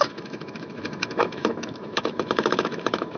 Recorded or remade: remade